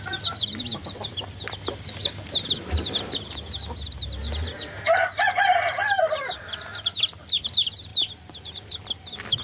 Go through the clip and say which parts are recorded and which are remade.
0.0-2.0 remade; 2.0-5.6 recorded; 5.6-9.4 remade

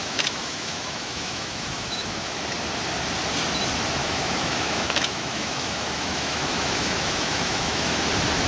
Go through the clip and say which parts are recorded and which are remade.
0.0-2.4 remade; 2.4-4.0 recorded; 4.0-8.0 remade; 8.0-8.5 recorded

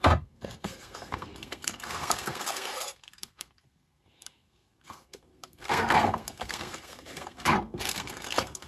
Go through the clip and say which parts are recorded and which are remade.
0.0-8.7 remade